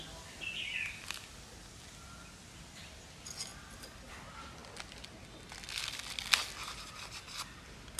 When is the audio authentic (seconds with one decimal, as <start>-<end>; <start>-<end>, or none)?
0.0-8.0